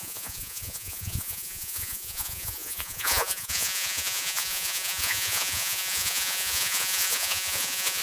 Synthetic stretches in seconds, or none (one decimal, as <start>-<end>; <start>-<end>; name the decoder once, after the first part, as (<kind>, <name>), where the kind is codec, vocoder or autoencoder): 0.0-8.0 (vocoder, Vocos)